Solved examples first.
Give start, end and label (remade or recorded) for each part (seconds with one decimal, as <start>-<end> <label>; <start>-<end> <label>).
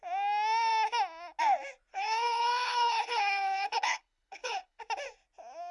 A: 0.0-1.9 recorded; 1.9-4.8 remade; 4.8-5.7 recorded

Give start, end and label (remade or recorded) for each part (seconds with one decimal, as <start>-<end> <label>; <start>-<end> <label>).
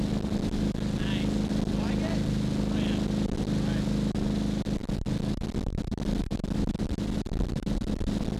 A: 0.0-8.4 recorded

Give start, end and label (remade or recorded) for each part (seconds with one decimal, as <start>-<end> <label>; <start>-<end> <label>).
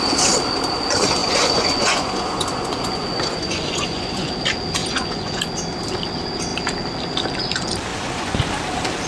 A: 0.0-1.2 recorded; 1.2-4.3 remade; 4.3-4.8 recorded; 4.8-5.4 remade; 5.4-7.9 recorded; 7.9-8.5 remade; 8.5-9.1 recorded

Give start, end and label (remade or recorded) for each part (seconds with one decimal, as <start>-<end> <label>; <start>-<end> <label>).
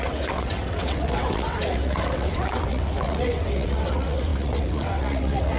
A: 0.0-5.6 remade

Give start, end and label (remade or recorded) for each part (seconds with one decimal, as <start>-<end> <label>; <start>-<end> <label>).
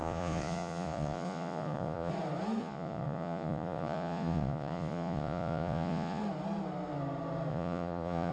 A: 0.0-2.1 remade; 2.1-2.6 recorded; 2.6-6.2 remade; 6.2-7.5 recorded; 7.5-8.3 remade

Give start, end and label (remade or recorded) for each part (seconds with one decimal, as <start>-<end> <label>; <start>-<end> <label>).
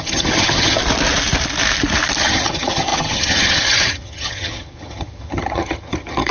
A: 0.0-0.8 remade; 0.8-2.2 recorded; 2.2-6.3 remade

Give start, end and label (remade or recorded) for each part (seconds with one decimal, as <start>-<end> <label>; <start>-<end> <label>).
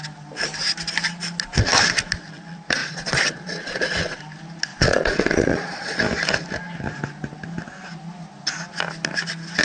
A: 0.0-2.8 recorded; 2.8-4.2 remade; 4.2-4.7 recorded; 4.7-6.0 remade; 6.0-9.6 recorded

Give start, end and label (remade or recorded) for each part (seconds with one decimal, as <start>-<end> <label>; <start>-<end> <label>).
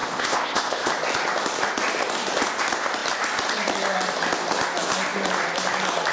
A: 0.0-0.9 remade; 0.9-6.1 recorded